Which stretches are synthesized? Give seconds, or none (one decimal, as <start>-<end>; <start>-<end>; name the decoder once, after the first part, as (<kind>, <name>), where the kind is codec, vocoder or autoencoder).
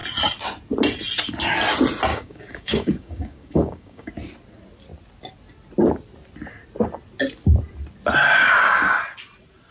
2.1-4.1 (codec, DAC); 8.4-9.0